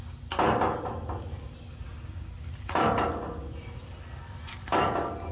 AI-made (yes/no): no